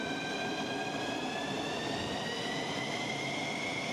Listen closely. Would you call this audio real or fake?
real